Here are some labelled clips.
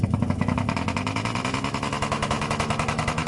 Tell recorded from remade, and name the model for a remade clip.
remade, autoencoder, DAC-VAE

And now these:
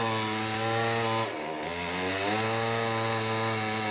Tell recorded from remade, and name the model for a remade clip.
recorded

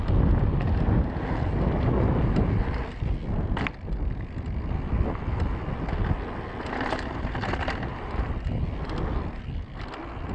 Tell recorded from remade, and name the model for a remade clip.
recorded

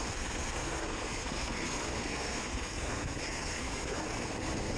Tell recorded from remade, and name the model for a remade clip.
remade, codec, SNAC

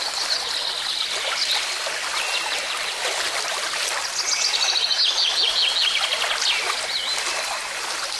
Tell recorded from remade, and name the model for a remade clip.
recorded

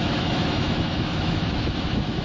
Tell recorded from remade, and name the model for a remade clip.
remade, autoencoder, DAC-VAE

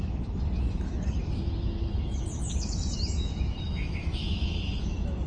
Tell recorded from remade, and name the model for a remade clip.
remade, autoencoder, DAC-VAE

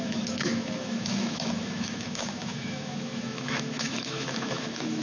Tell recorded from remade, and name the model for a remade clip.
remade, autoencoder, DAC-VAE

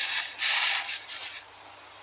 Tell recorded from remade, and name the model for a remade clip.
recorded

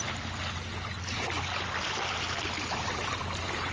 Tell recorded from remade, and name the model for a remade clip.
recorded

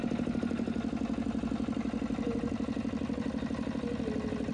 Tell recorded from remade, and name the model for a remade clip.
recorded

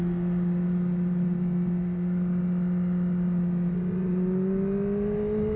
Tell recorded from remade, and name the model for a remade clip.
recorded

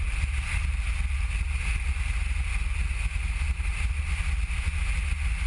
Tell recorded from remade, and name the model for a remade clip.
recorded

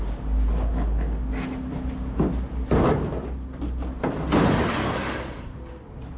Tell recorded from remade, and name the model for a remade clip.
recorded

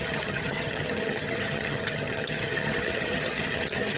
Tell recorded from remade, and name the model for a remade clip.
remade, vocoder, HiFi-GAN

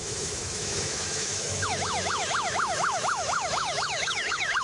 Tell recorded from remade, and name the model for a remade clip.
remade, autoencoder, DAC-VAE